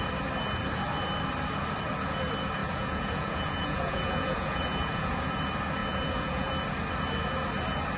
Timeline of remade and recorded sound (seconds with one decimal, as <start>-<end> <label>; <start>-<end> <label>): 0.0-2.6 recorded; 2.6-5.3 remade; 5.3-5.8 recorded; 5.8-6.5 remade; 6.5-8.0 recorded